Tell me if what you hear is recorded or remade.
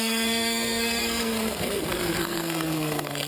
remade